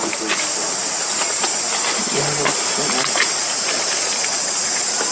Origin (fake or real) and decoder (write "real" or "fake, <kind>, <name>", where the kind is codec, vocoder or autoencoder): real